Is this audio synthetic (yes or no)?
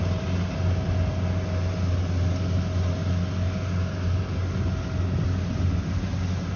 no